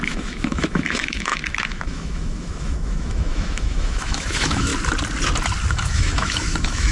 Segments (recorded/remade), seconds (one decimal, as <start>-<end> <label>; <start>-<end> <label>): 0.0-4.7 remade; 4.7-5.7 recorded; 5.7-6.9 remade